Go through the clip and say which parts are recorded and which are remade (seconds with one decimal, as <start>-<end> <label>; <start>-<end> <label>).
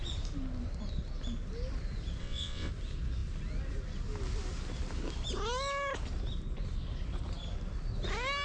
0.0-2.2 recorded; 2.2-2.7 remade; 2.7-8.4 recorded